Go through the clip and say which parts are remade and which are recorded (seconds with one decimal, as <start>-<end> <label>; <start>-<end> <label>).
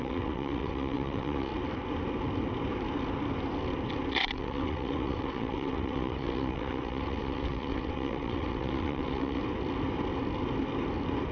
0.0-1.5 remade; 1.5-4.1 recorded; 4.1-9.4 remade; 9.4-11.3 recorded